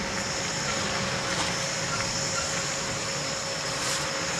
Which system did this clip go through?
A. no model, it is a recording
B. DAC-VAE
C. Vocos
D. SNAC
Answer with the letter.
A